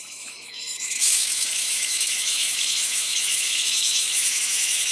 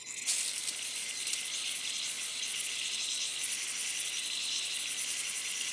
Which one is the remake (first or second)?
first